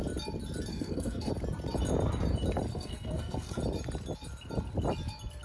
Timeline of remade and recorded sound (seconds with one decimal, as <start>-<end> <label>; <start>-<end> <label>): 0.0-0.7 recorded; 0.7-1.3 remade; 1.3-2.7 recorded; 2.7-3.6 remade; 3.6-5.4 recorded